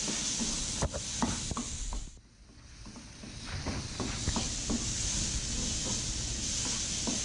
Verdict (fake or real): real